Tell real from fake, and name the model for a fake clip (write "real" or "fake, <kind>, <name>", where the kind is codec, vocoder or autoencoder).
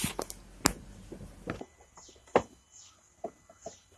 real